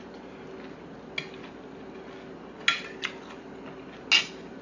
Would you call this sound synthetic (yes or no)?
no